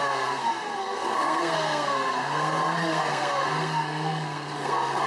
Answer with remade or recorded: remade